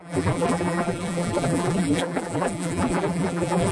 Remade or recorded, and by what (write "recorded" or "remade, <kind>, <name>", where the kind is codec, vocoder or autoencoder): remade, vocoder, BigVGAN v2